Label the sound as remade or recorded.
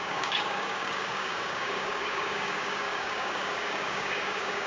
remade